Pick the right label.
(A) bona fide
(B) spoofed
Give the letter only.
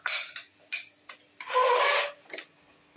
A